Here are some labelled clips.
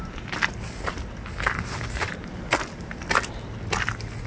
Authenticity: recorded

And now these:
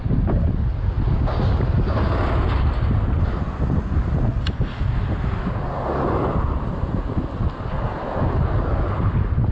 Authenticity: recorded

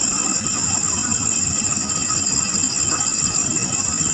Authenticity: recorded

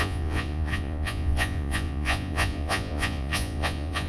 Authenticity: remade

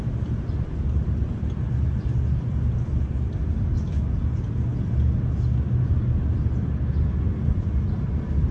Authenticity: recorded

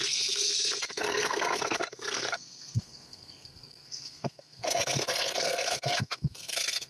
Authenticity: remade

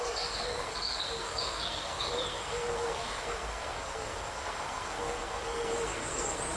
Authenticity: remade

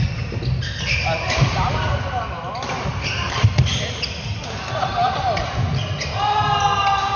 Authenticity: recorded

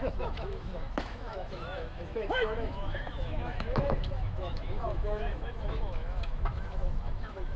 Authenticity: remade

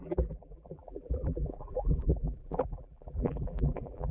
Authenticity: remade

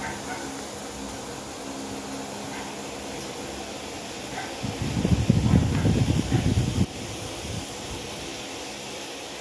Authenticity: recorded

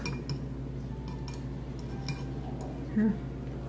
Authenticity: recorded